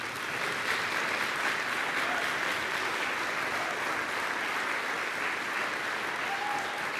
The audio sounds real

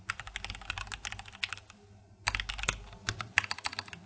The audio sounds real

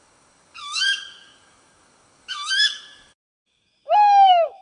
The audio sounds fake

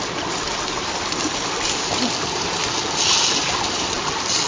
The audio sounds real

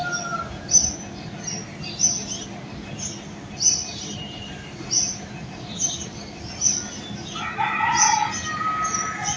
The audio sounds real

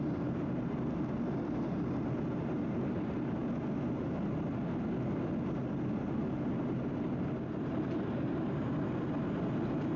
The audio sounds real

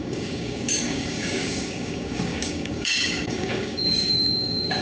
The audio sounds fake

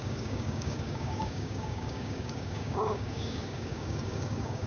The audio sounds fake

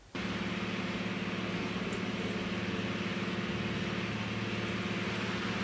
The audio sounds real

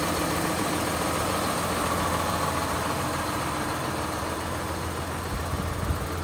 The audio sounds real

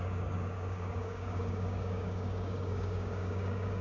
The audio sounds fake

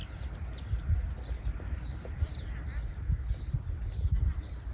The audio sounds real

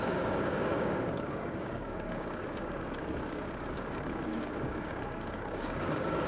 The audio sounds fake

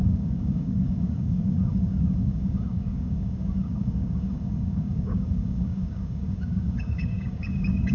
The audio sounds fake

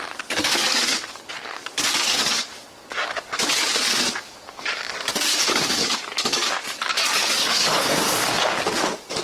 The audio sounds fake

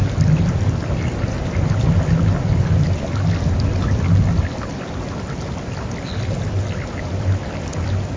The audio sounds real